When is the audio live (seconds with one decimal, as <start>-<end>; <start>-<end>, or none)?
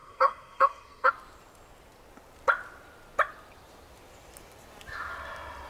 1.1-5.7